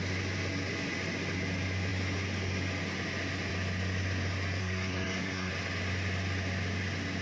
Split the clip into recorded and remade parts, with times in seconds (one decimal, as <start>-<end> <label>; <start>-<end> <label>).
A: 0.0-4.6 recorded; 4.6-5.5 remade; 5.5-7.2 recorded